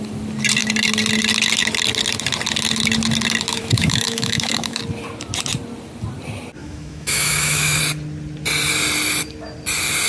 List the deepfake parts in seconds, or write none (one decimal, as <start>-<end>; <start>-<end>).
3.5-4.8; 6.6-7.8